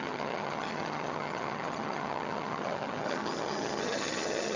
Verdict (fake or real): fake